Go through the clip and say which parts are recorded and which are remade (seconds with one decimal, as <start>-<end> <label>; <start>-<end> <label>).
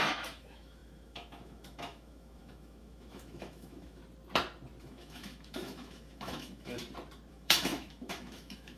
0.0-4.0 remade; 4.0-4.8 recorded; 4.8-6.8 remade; 6.8-7.3 recorded; 7.3-8.8 remade